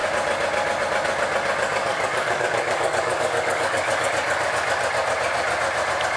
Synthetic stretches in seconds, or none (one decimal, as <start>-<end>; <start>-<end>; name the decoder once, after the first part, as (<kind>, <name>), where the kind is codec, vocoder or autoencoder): 1.8-4.1 (codec, DAC)

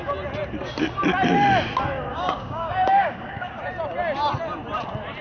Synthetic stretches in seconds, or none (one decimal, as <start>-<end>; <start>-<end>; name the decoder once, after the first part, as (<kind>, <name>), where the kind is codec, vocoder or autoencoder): 2.1-3.6 (codec, DAC)

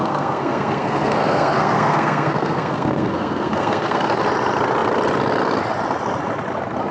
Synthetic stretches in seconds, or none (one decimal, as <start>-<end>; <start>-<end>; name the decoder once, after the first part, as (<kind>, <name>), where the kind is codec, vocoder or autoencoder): 0.0-4.1 (codec, SNAC)

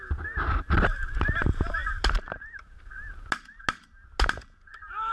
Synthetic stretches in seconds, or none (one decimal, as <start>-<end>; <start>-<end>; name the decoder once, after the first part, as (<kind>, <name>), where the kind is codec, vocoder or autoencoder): none

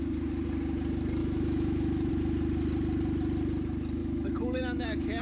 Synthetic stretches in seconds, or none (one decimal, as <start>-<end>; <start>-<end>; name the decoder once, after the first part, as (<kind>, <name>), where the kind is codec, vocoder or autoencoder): 1.2-2.1 (autoencoder, DAC-VAE); 4.0-5.2

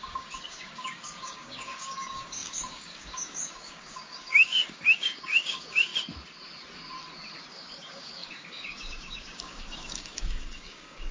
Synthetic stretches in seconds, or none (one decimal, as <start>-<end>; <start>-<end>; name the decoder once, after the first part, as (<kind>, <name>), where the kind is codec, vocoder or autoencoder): 0.0-5.9 (codec, DAC); 7.5-11.1

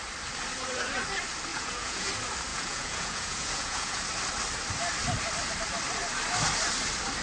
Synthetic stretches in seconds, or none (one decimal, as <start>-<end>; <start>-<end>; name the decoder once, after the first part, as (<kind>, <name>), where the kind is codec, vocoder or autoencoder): 1.5-2.1 (vocoder, Vocos); 2.5-4.0